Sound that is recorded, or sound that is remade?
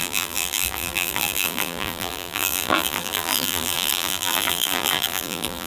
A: remade